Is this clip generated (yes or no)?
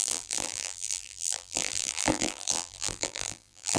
yes